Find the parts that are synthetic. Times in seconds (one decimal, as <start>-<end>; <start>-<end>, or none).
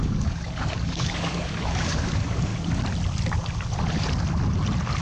0.0-2.5